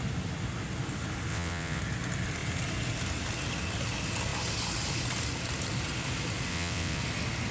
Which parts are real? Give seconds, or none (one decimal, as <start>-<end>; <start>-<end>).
0.0-1.3; 1.8-6.5; 7.0-7.5